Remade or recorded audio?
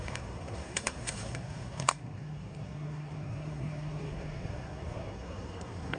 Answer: remade